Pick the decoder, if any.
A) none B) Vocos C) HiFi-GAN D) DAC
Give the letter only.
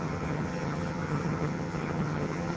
C